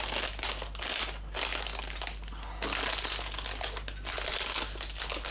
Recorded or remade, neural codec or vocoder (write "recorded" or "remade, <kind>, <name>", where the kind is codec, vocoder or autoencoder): recorded